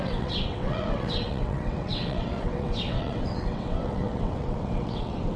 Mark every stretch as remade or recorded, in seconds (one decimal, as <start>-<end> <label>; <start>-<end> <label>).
0.0-5.4 remade